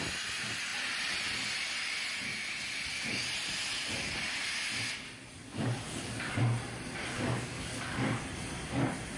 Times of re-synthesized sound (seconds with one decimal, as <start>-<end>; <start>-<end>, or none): 5.4-6.4; 7.1-8.2